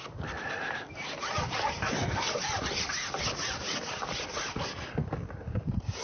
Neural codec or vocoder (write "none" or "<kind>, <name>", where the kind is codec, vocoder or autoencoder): none